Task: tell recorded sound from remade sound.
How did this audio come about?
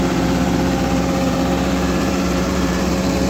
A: remade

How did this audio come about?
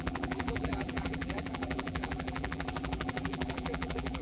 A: remade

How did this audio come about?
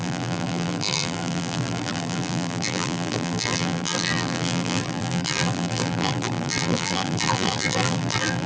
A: remade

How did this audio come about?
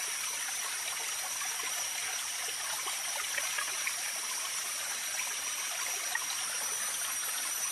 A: recorded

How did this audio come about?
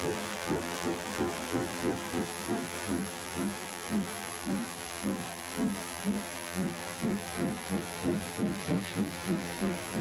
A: remade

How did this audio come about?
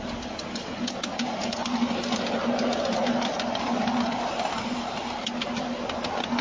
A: recorded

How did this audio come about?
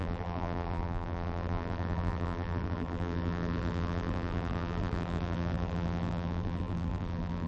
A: remade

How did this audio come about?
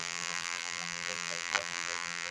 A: remade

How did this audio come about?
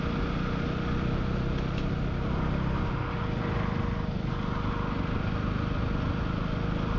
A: recorded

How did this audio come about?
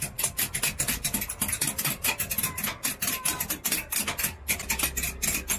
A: recorded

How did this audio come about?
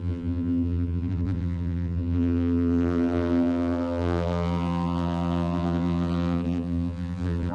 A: remade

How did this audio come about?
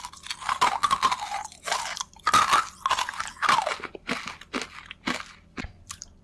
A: recorded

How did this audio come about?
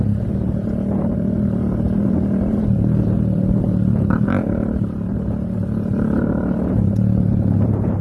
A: remade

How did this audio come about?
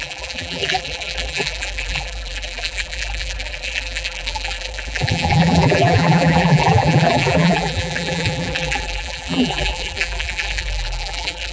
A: remade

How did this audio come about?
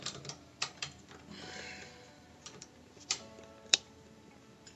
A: remade